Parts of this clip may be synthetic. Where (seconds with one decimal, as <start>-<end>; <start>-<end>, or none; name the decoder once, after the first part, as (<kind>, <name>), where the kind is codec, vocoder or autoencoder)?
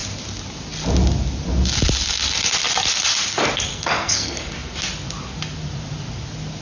3.7-4.5 (codec, SNAC)